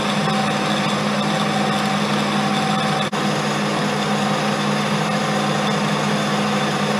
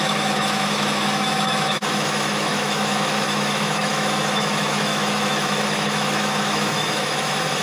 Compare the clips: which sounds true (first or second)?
first